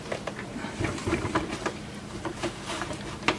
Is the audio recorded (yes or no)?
no